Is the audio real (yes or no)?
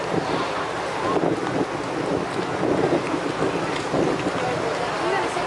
yes